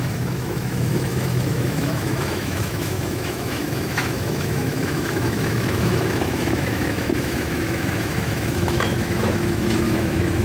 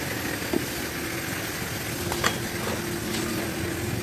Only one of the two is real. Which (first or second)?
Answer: second